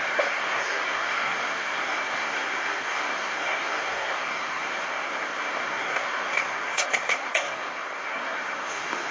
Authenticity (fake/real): fake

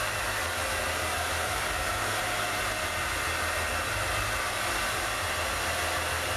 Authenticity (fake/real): real